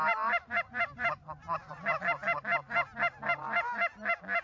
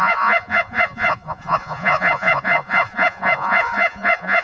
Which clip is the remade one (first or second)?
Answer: second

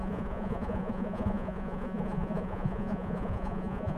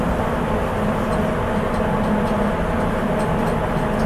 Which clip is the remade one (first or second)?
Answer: first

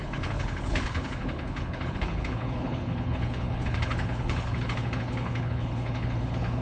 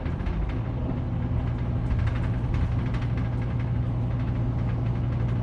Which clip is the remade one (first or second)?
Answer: first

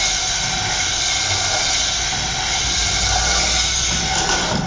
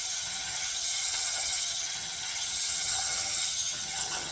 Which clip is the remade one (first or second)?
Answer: second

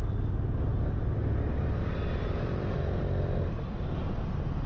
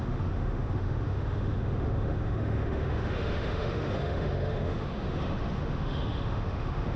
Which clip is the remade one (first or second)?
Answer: second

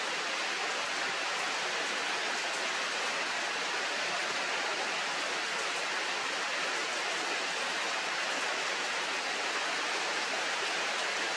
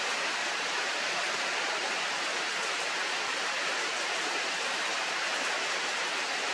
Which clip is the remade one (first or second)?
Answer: second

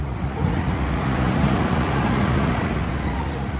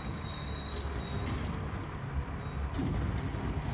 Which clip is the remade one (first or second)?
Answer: first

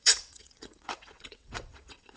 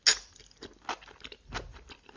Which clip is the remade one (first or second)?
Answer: first